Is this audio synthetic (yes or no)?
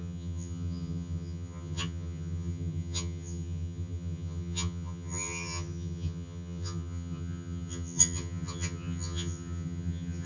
yes